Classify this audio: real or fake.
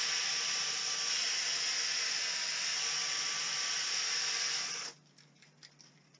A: real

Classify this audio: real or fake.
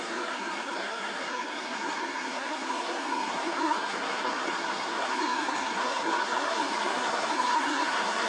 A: fake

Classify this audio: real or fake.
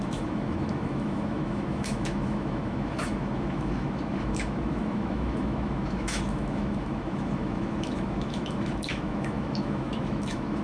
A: fake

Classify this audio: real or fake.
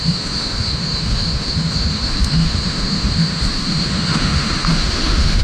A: fake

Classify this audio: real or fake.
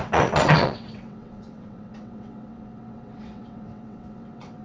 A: fake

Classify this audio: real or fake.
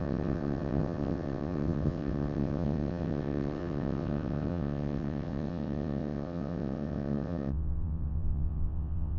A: fake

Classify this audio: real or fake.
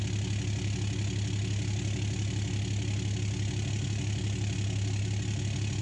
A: real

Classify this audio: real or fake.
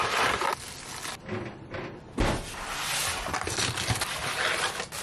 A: real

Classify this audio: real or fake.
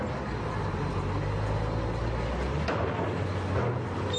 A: real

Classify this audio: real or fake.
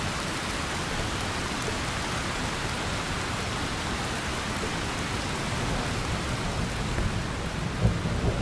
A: real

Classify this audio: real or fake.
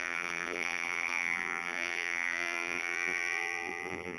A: fake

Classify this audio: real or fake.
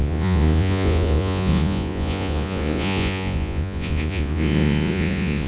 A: fake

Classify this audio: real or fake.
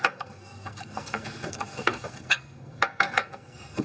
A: fake